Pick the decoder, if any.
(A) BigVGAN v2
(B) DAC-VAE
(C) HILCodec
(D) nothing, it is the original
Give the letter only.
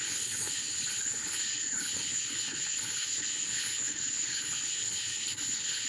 C